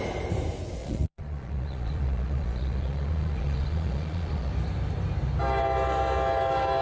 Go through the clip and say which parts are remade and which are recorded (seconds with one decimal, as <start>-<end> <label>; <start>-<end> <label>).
0.0-0.8 recorded; 0.8-4.5 remade; 4.5-6.8 recorded